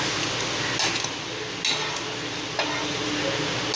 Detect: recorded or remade recorded